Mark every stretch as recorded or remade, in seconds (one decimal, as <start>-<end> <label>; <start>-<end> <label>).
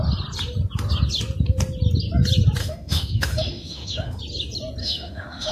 0.0-2.6 recorded; 2.6-4.2 remade; 4.2-4.8 recorded; 4.8-5.5 remade